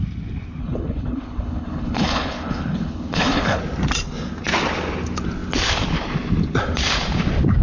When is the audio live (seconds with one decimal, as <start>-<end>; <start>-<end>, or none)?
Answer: 0.0-0.6; 3.6-7.6